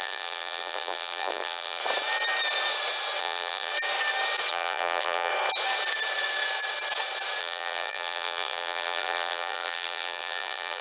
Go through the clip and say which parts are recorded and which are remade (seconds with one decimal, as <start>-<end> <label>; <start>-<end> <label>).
0.0-1.8 remade; 1.8-3.2 recorded; 3.2-3.7 remade; 3.7-4.5 recorded; 4.5-5.3 remade; 5.3-7.4 recorded; 7.4-10.8 remade